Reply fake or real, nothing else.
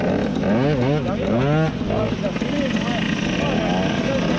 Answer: real